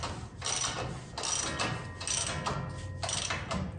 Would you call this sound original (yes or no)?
yes